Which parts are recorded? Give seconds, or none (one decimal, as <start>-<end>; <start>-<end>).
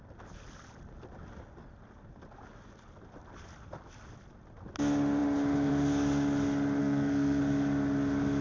0.0-6.8; 7.4-8.4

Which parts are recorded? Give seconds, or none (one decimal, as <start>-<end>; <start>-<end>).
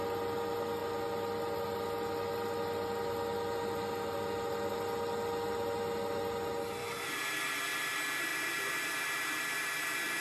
0.0-8.3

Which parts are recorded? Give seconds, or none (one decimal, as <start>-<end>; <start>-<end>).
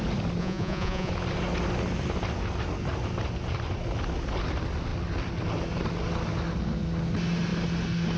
0.0-0.4; 1.1-8.2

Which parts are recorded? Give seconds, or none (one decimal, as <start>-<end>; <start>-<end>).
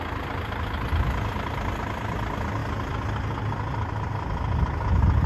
0.0-5.3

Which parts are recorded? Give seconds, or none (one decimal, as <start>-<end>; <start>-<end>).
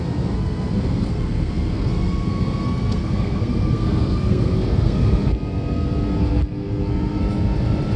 5.3-6.2; 7.2-8.0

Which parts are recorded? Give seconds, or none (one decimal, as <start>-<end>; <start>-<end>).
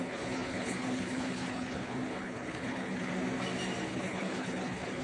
3.1-3.9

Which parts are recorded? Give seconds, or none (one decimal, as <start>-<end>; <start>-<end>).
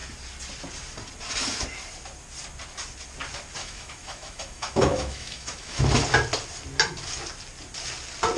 0.0-3.6; 5.8-8.4